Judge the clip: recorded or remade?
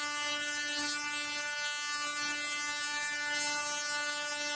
recorded